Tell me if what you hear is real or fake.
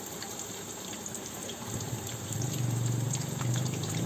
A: fake